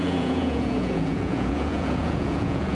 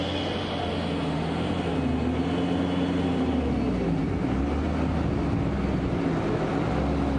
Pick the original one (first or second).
second